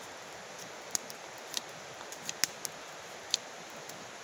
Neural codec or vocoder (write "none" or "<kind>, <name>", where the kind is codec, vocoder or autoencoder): none